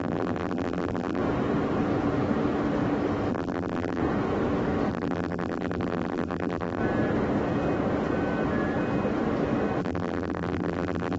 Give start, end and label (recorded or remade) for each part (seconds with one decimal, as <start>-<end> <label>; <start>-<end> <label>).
0.0-1.2 remade; 1.2-3.3 recorded; 3.3-4.0 remade; 4.0-4.9 recorded; 4.9-6.8 remade; 6.8-9.8 recorded; 9.8-11.2 remade